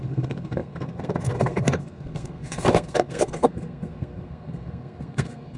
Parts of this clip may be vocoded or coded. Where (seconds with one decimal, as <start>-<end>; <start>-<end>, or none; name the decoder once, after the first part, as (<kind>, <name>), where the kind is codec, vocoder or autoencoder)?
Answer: 0.0-5.6 (codec, SNAC)